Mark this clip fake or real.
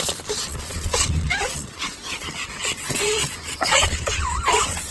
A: fake